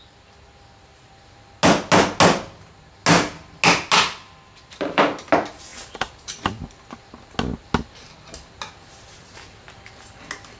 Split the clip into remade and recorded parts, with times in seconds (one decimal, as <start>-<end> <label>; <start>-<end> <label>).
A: 0.0-10.6 recorded